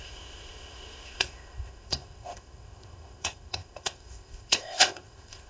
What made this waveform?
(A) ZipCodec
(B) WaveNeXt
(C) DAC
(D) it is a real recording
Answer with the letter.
A